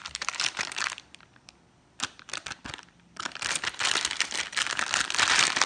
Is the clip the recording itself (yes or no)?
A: no